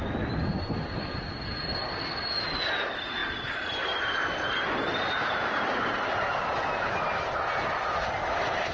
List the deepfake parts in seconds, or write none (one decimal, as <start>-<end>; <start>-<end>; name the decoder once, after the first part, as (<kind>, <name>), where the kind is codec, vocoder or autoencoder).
none